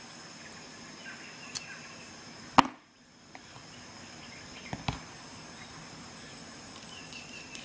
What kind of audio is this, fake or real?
real